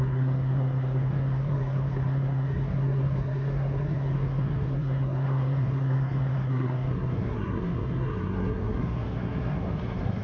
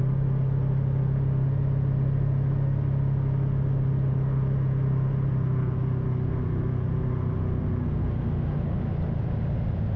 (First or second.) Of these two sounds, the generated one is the first